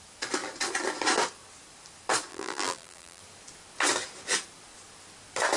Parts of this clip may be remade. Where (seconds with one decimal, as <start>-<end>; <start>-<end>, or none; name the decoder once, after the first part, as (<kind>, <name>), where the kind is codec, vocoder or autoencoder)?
2.3-3.2 (vocoder, BigVGAN v2)